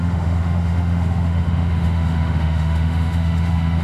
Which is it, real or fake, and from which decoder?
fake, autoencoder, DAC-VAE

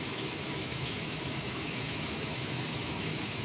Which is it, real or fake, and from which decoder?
fake, autoencoder, DAC-VAE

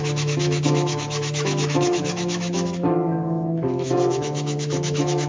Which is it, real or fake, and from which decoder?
fake, autoencoder, DAC-VAE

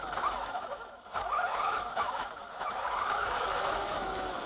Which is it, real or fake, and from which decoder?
fake, autoencoder, DAC-VAE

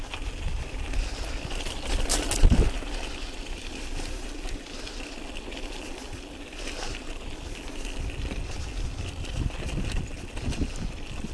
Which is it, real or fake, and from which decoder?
real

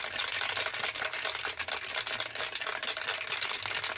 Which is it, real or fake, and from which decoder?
real